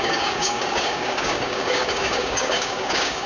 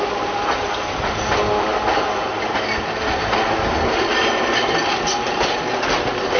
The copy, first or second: first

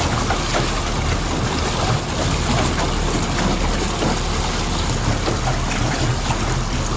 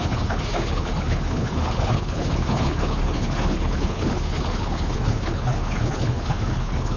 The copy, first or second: second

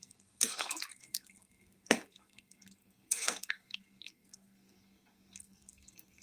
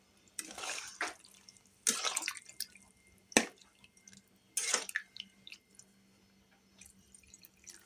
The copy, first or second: first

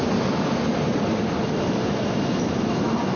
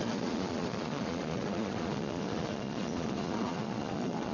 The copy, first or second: second